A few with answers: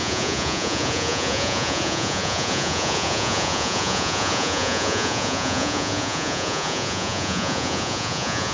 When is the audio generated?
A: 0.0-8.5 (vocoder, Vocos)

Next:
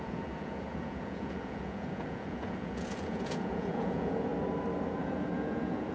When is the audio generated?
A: 0.0-4.3 (vocoder, Vocos); 5.0-5.9